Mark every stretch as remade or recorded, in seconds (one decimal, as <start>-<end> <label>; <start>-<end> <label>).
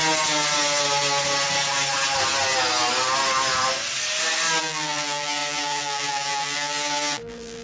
0.0-4.6 recorded; 4.6-7.6 remade